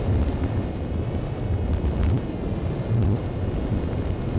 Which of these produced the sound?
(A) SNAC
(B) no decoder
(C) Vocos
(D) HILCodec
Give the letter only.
B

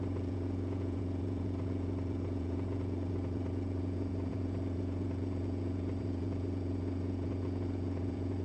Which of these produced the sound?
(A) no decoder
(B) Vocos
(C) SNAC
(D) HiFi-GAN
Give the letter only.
B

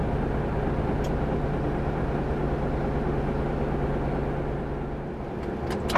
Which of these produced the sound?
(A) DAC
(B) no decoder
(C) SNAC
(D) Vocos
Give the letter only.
B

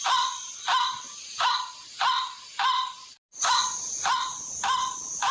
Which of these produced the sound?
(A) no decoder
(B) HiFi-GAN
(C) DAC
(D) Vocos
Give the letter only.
A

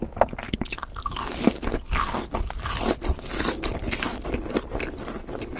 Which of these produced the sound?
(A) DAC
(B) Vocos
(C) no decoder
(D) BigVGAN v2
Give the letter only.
C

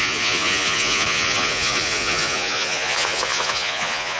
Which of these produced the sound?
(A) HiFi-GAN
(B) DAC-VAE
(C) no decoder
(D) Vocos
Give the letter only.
D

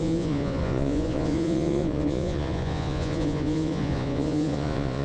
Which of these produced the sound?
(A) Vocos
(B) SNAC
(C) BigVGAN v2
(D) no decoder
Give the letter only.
A